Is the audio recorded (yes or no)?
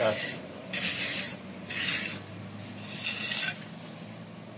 yes